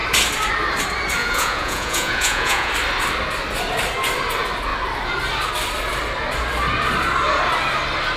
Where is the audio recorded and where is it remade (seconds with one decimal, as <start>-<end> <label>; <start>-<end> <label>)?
0.0-1.2 recorded; 1.2-2.7 remade; 2.7-8.2 recorded